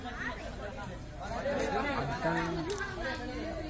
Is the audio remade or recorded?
recorded